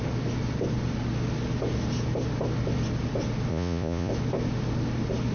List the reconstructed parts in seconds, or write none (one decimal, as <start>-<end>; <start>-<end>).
3.5-4.1